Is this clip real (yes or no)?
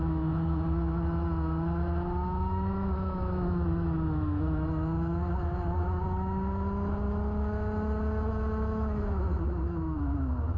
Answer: no